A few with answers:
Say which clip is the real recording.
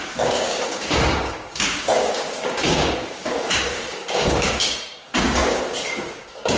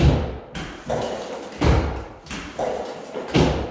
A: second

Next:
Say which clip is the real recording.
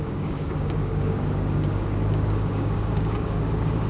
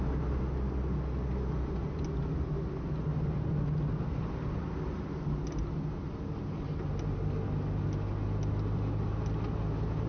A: second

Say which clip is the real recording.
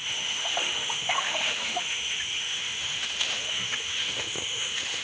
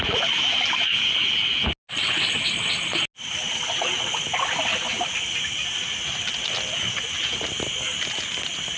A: second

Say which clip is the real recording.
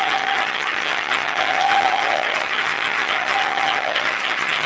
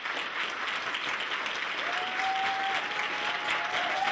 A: second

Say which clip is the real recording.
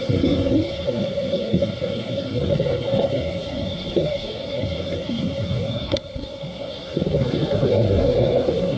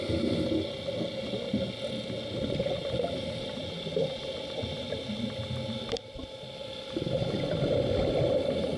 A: second